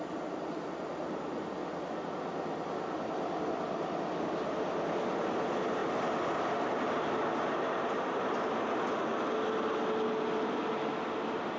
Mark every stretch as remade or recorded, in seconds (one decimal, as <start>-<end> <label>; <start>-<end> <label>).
0.0-11.6 recorded